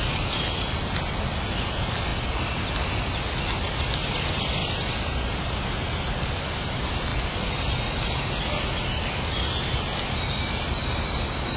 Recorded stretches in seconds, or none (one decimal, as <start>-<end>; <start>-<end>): 0.0-11.6